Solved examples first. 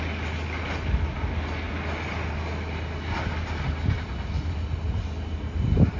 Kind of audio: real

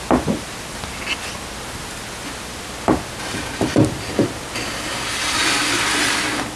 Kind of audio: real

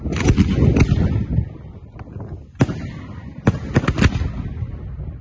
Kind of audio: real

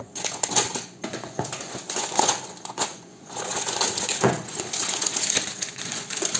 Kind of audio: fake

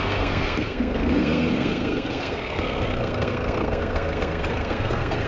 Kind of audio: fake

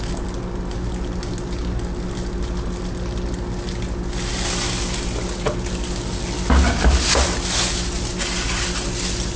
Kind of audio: real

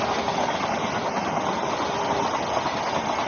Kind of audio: real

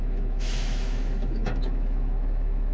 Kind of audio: fake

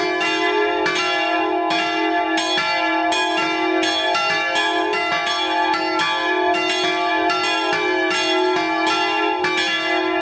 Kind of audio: real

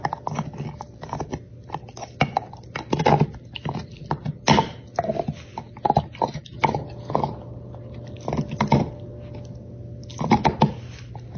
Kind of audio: real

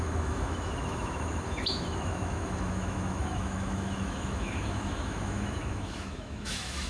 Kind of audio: fake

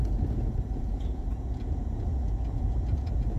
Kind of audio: fake